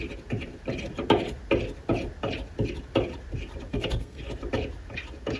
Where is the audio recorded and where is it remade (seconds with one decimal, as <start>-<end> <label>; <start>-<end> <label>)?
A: 0.0-3.7 recorded; 3.7-4.2 remade; 4.2-5.4 recorded